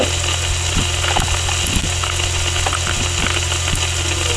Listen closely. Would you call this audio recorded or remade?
recorded